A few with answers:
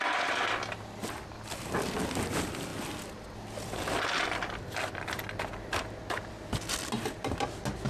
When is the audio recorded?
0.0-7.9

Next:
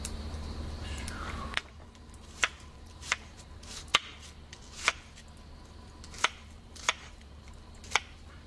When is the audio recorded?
3.9-6.2

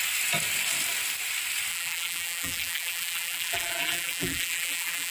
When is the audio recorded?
0.0-1.7

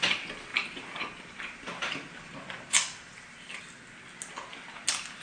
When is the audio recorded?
0.0-0.5; 3.6-5.2

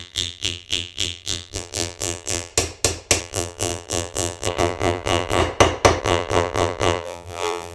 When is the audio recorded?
2.5-3.2; 5.4-6.0

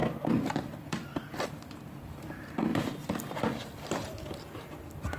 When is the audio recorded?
1.3-2.7; 3.8-5.2

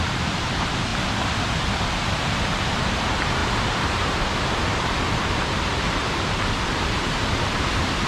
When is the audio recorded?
0.9-1.8; 6.0-6.7

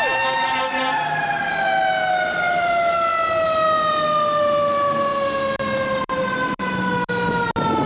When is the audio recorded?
3.1-3.9